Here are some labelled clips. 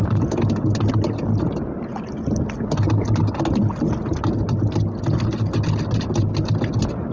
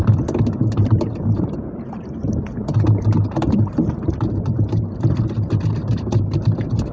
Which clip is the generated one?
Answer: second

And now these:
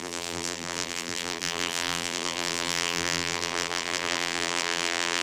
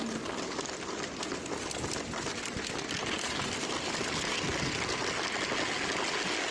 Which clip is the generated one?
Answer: first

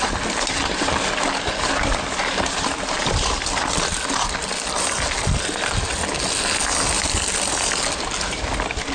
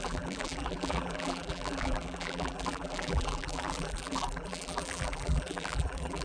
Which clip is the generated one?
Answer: second